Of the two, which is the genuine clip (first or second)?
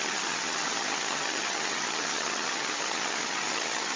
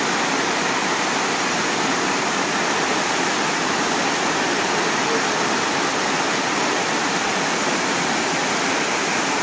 second